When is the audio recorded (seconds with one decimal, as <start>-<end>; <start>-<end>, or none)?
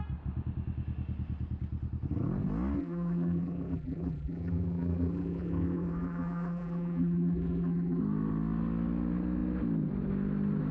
0.0-2.8; 8.0-10.7